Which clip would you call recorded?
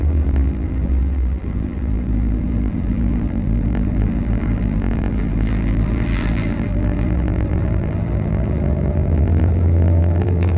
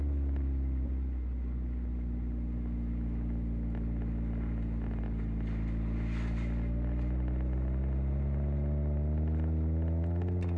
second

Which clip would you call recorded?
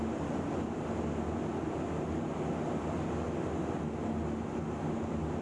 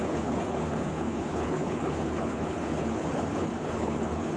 first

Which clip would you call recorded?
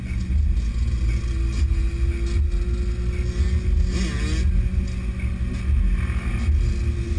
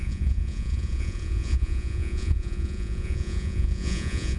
first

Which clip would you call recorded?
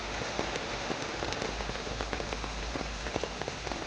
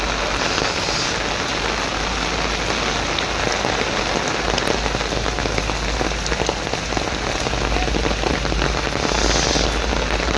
second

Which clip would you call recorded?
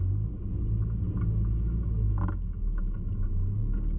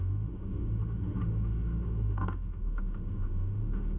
first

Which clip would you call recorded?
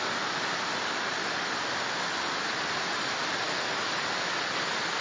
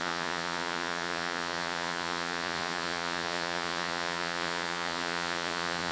first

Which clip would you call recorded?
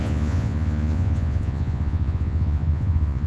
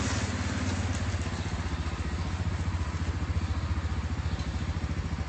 second